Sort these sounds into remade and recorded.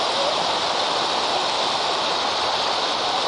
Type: recorded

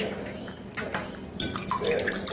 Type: remade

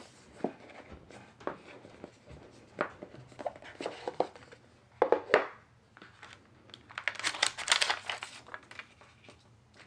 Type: recorded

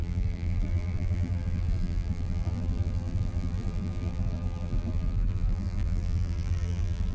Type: remade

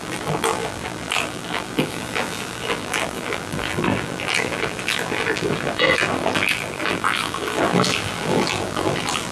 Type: remade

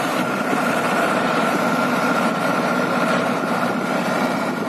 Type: remade